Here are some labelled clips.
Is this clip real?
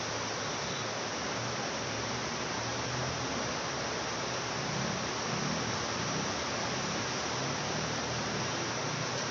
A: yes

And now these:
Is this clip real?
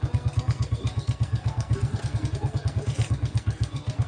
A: no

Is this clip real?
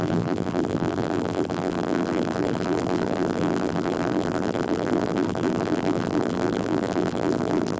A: no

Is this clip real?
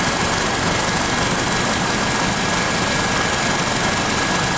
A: yes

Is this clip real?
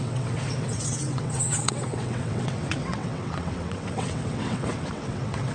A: no